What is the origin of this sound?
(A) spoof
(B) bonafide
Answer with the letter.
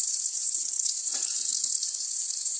A